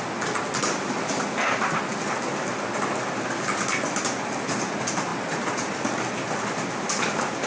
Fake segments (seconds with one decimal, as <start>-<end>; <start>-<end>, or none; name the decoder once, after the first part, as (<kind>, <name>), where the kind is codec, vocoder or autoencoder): none

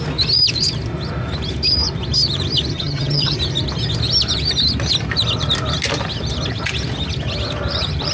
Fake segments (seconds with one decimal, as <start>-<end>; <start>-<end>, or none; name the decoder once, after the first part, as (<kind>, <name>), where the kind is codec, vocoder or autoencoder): 2.7-3.4 (vocoder, HiFi-GAN)

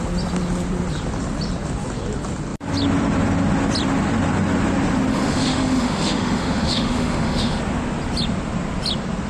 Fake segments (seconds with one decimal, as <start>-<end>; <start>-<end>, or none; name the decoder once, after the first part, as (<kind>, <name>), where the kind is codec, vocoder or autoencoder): 5.1-7.6 (autoencoder, DAC-VAE)

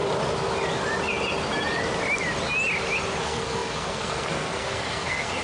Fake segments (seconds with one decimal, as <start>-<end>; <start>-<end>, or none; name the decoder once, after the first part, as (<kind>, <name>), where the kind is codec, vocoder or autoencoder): 3.2-5.4 (codec, SNAC)

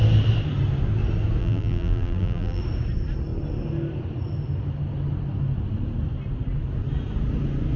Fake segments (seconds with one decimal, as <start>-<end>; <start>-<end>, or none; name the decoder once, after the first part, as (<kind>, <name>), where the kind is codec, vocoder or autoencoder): 1.4-2.6 (vocoder, BigVGAN v2)

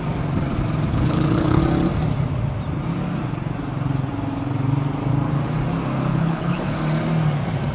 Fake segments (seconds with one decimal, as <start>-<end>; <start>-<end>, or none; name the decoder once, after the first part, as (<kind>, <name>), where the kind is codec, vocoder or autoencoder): 0.9-1.6 (codec, HILCodec); 6.1-6.8

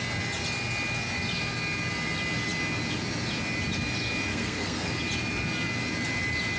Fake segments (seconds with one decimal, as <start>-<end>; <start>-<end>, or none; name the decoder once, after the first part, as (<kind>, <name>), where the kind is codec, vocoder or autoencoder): 4.3-4.9 (codec, SNAC)